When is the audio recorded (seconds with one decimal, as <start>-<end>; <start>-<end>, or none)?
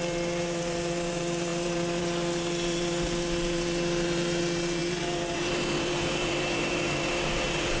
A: none